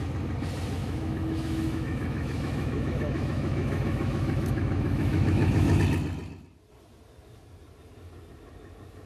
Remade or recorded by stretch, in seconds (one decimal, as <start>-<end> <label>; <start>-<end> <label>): 0.0-0.8 recorded; 0.8-5.8 remade; 5.8-9.1 recorded